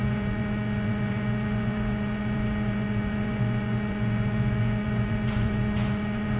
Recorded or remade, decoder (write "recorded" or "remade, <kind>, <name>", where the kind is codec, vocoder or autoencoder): remade, vocoder, Vocos